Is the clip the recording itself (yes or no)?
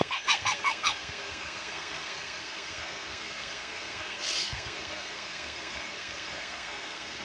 no